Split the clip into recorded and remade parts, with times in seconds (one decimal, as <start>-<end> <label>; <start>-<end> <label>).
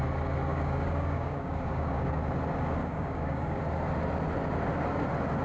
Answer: 0.0-0.5 recorded; 0.5-2.2 remade; 2.2-2.8 recorded; 2.8-3.6 remade; 3.6-5.4 recorded